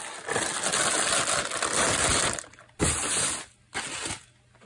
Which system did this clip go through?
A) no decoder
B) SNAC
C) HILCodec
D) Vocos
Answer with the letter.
A